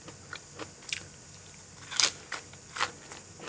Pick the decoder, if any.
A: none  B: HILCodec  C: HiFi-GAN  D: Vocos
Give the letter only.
A